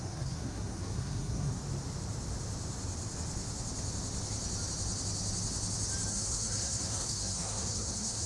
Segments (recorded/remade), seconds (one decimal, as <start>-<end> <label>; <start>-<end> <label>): 0.0-1.6 remade; 1.6-6.1 recorded; 6.1-8.3 remade